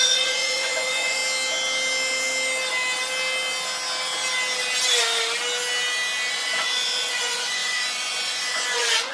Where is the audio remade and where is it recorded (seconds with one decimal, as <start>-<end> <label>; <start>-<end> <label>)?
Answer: 0.0-1.2 remade; 1.2-6.3 recorded; 6.3-9.1 remade